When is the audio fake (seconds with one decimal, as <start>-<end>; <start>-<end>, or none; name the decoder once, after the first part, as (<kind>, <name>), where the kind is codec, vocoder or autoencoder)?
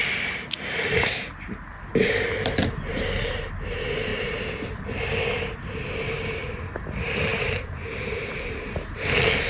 1.9-3.1 (vocoder, BigVGAN v2); 4.1-4.7; 7.3-8.9